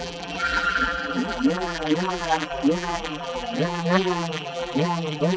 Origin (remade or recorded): remade